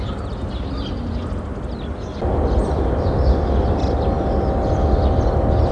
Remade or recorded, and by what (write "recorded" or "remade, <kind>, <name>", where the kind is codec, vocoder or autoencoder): recorded